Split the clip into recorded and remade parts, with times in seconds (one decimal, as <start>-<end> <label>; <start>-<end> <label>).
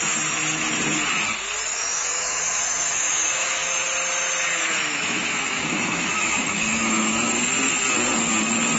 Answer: 0.0-1.7 recorded; 1.7-3.8 remade; 3.8-4.5 recorded; 4.5-7.3 remade; 7.3-8.8 recorded